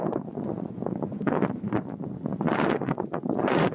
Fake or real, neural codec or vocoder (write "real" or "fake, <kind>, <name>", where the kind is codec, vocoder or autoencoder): fake, vocoder, Vocos